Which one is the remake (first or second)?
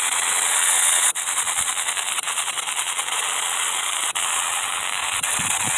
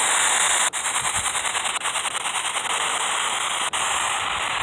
first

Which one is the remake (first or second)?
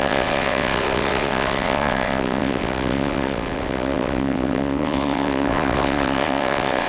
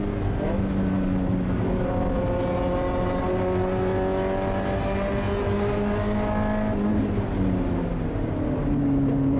first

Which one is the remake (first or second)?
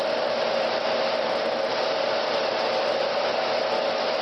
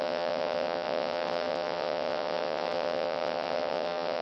second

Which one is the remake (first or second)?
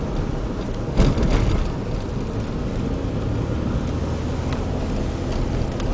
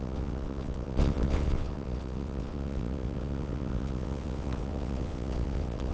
second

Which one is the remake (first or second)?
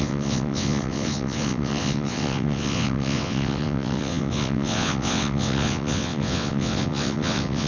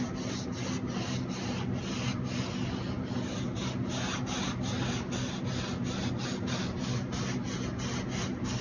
first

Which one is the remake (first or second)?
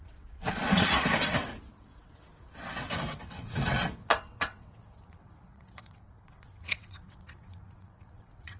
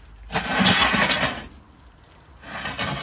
first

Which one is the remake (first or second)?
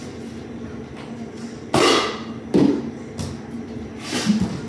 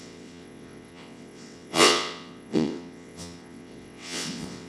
second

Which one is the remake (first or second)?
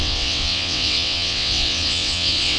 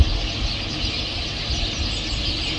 first